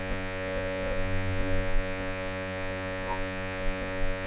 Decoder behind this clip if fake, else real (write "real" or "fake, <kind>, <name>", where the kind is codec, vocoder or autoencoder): fake, vocoder, Vocos